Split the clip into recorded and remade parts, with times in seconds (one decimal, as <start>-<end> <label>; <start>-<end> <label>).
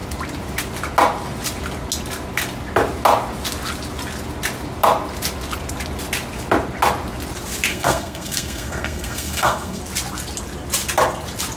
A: 0.0-7.7 recorded; 7.7-9.8 remade; 9.8-11.6 recorded